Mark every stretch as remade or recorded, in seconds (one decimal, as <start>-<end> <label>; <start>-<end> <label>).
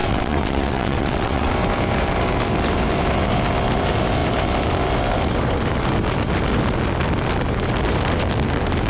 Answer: 0.0-1.5 remade; 1.5-8.9 recorded